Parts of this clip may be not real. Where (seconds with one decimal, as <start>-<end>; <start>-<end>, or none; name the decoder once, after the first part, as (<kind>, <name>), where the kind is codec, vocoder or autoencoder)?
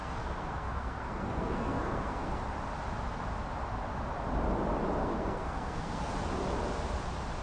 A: 0.0-2.4 (codec, SNAC); 5.0-6.1